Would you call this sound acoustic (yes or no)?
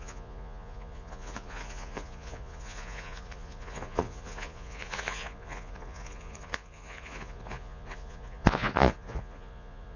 no